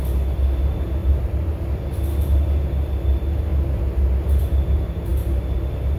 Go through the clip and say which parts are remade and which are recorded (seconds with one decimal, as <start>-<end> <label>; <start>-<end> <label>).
0.0-1.0 recorded; 1.0-1.6 remade; 1.6-6.0 recorded